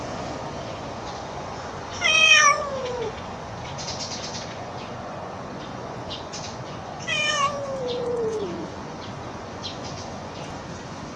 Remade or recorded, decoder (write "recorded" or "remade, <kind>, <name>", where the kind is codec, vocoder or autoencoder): remade, vocoder, Vocos